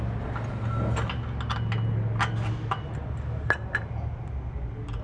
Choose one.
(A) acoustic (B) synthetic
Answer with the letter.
A